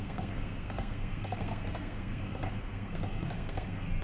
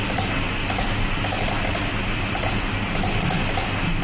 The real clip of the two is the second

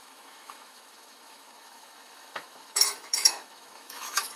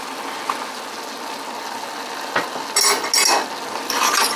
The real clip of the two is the second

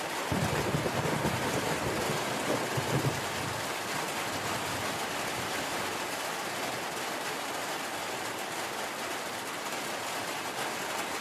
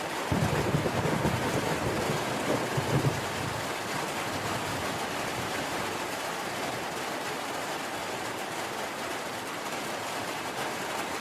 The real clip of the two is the first